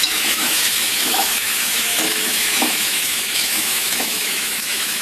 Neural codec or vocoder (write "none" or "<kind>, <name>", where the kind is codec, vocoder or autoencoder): autoencoder, DAC-VAE